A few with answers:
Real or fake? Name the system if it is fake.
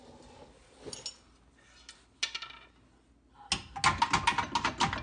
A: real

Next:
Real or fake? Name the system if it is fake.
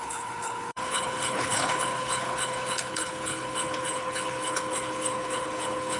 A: fake, codec, HILCodec